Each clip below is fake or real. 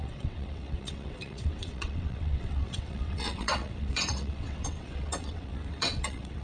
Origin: fake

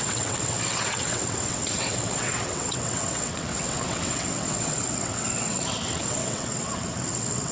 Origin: fake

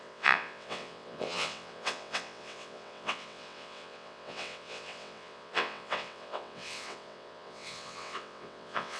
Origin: fake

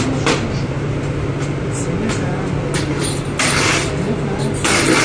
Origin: real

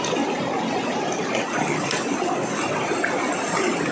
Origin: real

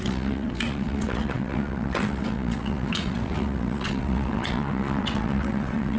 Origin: fake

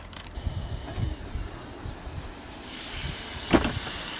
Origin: real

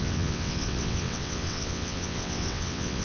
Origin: fake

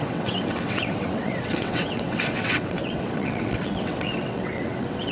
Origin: fake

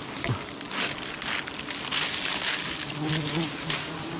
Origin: real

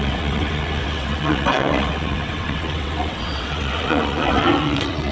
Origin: fake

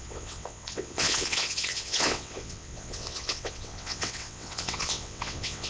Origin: fake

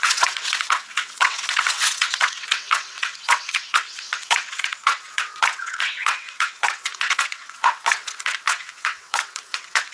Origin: fake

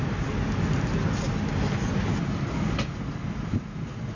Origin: real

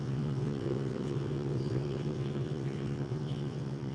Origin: fake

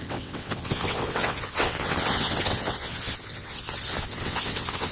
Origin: fake